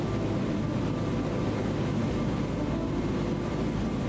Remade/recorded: recorded